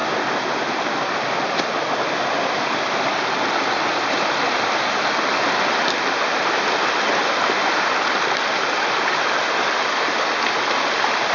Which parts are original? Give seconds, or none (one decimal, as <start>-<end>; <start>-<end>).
0.0-11.3